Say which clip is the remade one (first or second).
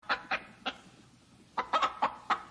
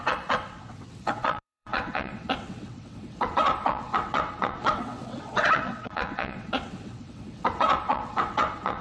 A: second